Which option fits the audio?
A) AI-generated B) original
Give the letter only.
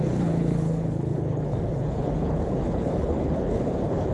A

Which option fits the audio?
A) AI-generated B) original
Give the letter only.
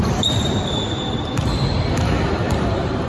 A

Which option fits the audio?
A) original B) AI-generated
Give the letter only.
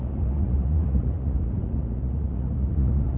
B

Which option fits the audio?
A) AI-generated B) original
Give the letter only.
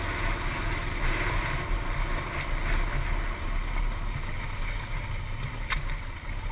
B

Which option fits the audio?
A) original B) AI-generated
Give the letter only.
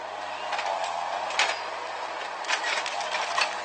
A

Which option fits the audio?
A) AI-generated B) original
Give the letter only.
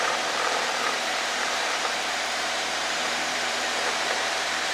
A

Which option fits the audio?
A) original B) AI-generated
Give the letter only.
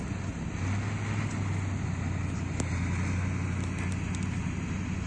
A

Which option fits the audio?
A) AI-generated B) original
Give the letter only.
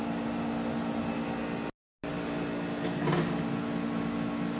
B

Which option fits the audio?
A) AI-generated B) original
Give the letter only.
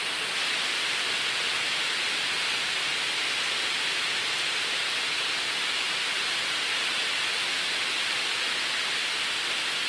B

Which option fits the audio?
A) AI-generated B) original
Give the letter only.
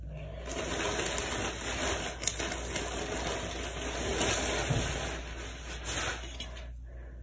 B